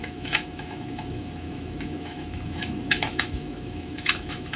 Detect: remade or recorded remade